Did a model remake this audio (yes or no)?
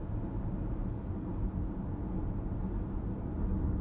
no